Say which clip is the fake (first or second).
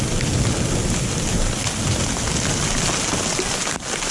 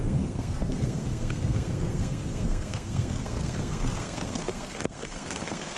second